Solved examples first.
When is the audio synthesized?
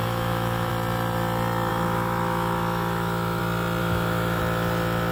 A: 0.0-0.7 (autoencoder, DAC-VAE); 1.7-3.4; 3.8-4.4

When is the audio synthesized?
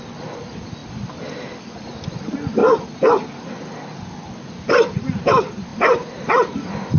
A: none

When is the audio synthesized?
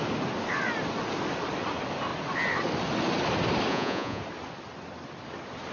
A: 3.7-4.2 (vocoder, Vocos)